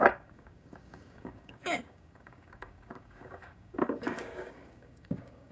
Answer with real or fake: fake